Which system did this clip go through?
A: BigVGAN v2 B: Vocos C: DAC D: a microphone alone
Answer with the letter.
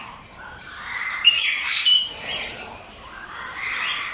A